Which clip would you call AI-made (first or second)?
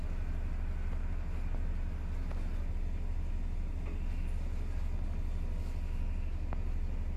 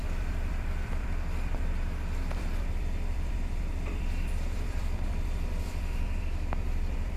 second